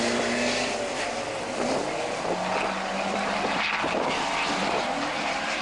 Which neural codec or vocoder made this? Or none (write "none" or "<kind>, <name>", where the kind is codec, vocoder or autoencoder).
none